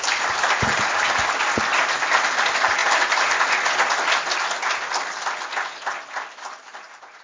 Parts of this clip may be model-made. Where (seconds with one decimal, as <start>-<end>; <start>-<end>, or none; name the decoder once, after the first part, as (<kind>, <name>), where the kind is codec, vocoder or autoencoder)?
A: none